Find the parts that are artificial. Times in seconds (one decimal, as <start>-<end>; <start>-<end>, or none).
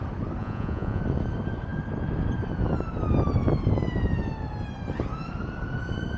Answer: 0.4-1.0